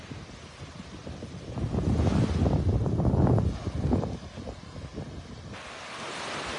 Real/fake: real